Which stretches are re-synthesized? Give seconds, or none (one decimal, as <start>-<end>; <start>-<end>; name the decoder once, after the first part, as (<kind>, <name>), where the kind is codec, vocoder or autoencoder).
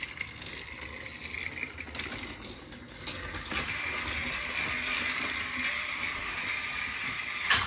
none